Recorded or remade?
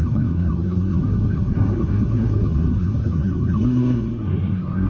remade